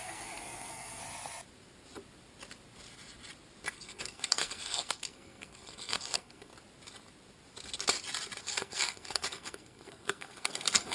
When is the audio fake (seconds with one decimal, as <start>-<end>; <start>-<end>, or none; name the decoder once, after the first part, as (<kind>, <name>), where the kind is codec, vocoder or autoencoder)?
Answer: 0.0-1.0 (codec, SNAC); 3.7-6.5; 8.4-10.9